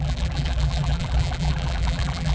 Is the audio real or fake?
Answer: fake